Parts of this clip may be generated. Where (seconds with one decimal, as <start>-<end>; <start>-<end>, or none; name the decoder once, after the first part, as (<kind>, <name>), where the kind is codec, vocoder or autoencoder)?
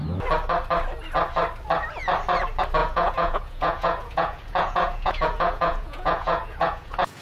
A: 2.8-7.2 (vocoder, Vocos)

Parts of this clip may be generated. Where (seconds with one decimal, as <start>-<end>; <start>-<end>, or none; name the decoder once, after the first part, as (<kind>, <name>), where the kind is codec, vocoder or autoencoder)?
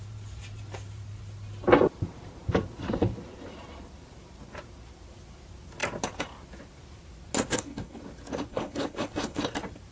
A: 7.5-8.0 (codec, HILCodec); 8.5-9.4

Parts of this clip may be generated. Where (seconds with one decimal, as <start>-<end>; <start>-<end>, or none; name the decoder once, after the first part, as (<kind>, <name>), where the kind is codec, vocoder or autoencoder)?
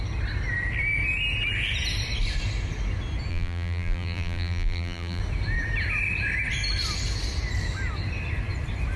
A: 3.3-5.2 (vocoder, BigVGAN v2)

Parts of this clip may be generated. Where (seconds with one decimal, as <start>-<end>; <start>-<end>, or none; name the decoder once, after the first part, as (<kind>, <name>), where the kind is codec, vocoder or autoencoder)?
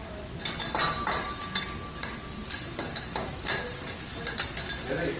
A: none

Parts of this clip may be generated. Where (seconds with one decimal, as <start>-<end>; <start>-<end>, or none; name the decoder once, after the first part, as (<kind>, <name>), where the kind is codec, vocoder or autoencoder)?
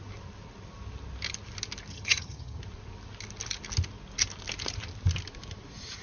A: 1.9-2.6 (vocoder, HiFi-GAN)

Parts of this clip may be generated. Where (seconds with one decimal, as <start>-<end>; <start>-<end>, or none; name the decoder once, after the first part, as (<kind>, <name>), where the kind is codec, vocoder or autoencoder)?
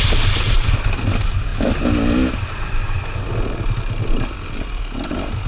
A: none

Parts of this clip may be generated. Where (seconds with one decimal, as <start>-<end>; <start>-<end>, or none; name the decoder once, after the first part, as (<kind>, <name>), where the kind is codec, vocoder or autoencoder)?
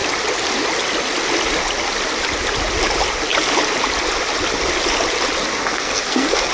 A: 5.5-6.5 (codec, SNAC)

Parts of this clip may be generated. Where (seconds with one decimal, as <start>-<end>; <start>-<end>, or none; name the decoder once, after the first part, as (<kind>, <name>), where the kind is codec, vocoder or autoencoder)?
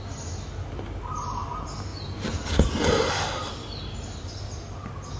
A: none